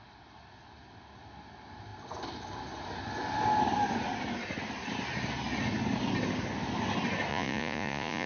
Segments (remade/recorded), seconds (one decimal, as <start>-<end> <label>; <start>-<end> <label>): 0.0-7.3 recorded; 7.3-8.3 remade